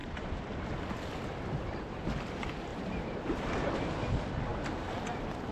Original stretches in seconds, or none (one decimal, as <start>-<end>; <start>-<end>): 0.6-2.7; 3.7-5.5